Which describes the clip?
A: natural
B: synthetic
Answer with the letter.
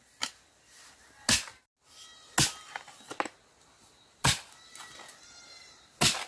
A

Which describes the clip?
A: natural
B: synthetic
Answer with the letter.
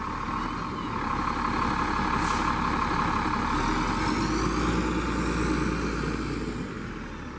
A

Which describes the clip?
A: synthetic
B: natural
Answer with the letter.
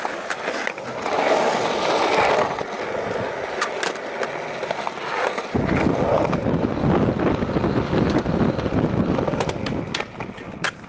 B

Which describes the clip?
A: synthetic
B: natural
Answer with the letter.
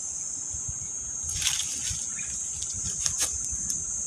B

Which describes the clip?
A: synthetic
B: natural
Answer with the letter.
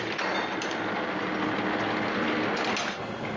B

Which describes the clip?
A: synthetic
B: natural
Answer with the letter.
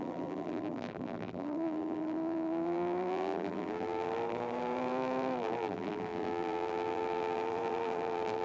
A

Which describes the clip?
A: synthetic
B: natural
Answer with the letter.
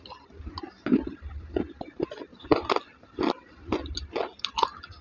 B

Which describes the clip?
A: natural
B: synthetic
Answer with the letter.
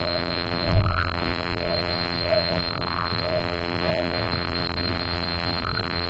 B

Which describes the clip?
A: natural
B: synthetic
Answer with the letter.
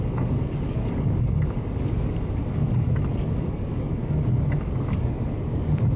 B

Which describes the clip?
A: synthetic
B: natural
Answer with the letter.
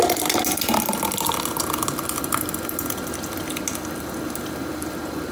B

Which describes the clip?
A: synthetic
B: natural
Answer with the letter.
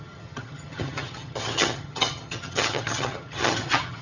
A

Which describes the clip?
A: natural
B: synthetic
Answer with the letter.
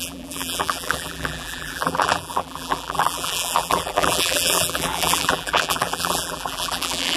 B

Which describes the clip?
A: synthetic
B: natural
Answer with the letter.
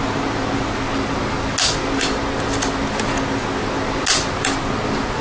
B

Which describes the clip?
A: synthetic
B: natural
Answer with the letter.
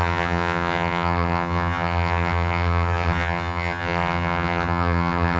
A